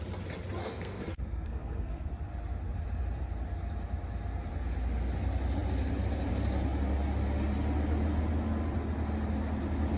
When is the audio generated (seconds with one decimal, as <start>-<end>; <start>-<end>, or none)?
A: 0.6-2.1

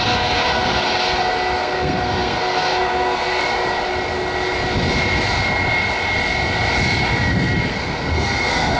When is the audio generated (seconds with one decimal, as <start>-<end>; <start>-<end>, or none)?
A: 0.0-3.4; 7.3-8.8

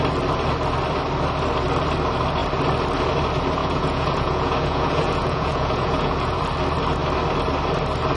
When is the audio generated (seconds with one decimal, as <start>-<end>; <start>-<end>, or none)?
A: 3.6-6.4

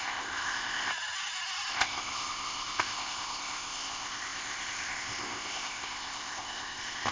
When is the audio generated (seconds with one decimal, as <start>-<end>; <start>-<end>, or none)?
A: 0.0-0.9; 1.7-7.1

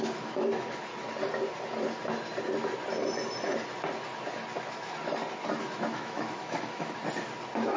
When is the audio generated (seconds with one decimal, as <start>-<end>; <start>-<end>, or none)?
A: 0.0-0.9; 5.6-7.0

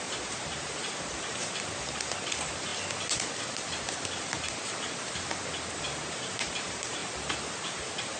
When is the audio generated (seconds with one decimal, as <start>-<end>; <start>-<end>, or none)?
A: 0.0-2.7; 5.7-7.0; 7.5-8.2